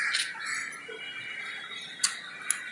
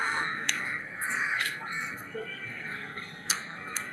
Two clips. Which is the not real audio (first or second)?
second